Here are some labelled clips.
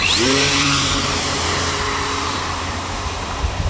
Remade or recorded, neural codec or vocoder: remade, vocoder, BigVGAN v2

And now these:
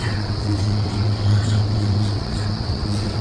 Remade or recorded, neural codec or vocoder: remade, vocoder, WaveNeXt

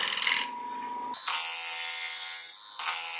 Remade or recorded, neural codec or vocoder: recorded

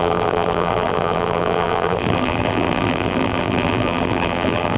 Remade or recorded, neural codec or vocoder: remade, vocoder, BigVGAN v2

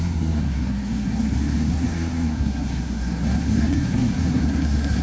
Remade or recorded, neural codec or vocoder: remade, codec, SNAC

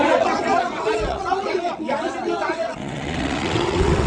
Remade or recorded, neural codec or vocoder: remade, vocoder, WaveNeXt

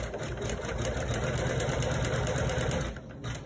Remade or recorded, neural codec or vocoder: recorded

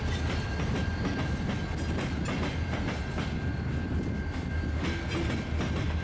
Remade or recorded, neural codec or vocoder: recorded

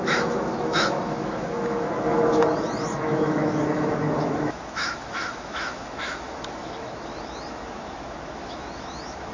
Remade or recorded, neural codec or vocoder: remade, autoencoder, DAC-VAE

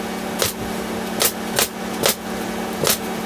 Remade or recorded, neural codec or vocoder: recorded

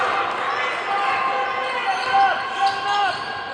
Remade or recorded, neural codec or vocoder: recorded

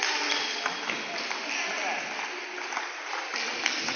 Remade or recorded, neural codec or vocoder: recorded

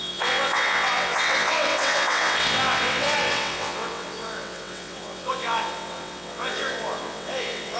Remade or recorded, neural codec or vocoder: remade, vocoder, WaveNeXt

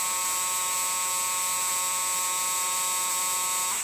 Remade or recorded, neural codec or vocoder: recorded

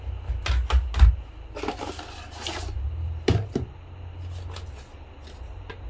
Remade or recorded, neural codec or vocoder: recorded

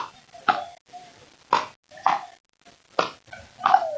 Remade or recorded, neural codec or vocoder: recorded